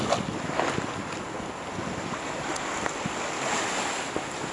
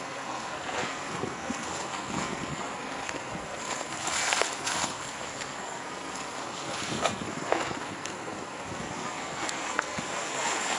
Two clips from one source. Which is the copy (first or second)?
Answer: second